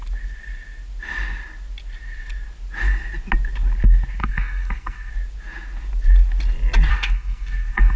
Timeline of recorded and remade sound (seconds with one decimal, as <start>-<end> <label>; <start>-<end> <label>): 0.0-4.2 recorded; 4.2-5.1 remade; 5.1-6.9 recorded; 6.9-8.0 remade